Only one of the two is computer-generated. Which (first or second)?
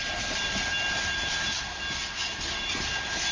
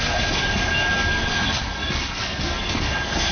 second